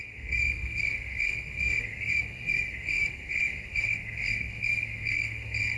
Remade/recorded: remade